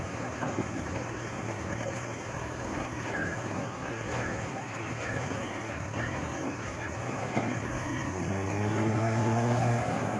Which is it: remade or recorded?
remade